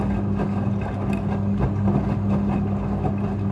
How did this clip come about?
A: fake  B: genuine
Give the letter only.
B